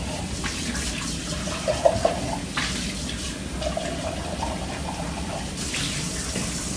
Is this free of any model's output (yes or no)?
yes